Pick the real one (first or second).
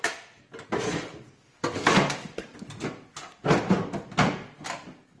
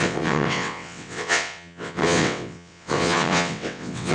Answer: first